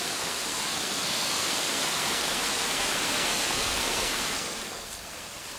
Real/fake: fake